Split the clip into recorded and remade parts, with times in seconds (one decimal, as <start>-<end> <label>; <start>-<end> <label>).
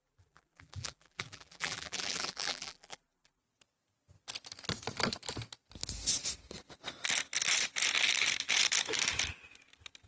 0.0-3.4 remade; 3.4-10.1 recorded